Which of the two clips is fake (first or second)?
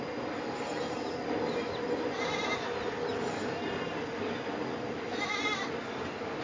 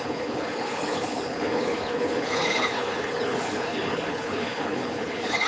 second